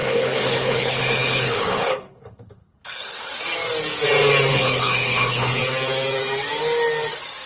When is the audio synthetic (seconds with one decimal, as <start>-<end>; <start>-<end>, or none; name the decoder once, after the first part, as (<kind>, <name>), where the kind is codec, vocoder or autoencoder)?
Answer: 0.0-3.3 (codec, HILCodec); 4.5-5.6